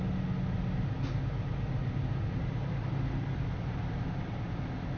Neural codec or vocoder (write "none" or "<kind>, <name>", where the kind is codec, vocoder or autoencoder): none